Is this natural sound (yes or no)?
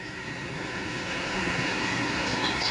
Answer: no